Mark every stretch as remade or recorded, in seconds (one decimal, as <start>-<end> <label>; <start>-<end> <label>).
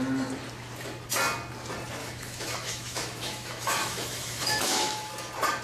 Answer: 0.0-2.0 recorded; 2.0-5.1 remade; 5.1-5.6 recorded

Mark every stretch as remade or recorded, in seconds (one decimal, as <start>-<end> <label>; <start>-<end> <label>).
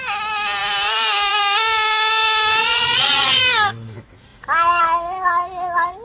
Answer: 0.0-2.6 recorded; 2.6-3.4 remade; 3.4-6.0 recorded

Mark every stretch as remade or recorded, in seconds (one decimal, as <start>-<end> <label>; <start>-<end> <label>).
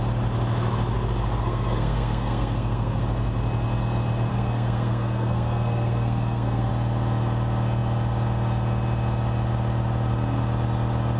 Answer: 0.0-1.4 recorded; 1.4-3.0 remade; 3.0-4.3 recorded; 4.3-6.7 remade; 6.7-11.2 recorded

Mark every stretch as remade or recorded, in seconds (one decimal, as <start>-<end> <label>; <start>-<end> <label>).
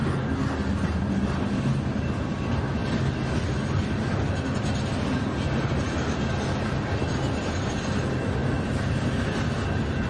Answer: 0.0-10.1 recorded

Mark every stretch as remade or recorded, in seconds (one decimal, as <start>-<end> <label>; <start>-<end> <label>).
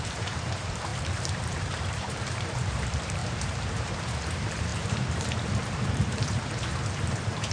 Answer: 0.0-7.5 remade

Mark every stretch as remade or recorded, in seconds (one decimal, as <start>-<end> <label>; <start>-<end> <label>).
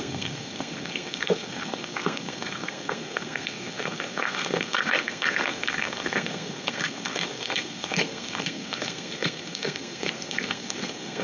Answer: 0.0-11.2 remade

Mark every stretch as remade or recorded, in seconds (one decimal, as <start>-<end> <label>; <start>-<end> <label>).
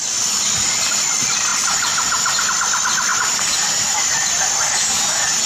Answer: 0.0-3.1 remade; 3.1-5.5 recorded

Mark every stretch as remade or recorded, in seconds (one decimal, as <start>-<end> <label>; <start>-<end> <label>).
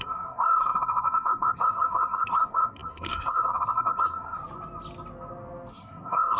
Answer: 0.0-4.4 remade; 4.4-5.7 recorded; 5.7-6.4 remade